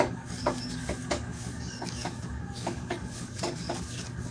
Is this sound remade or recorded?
remade